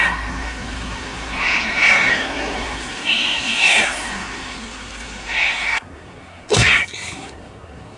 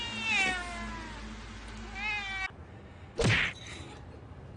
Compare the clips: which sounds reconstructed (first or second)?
first